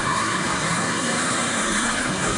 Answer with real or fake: fake